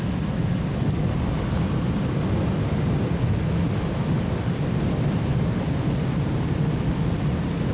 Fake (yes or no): no